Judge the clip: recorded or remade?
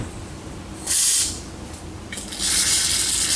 remade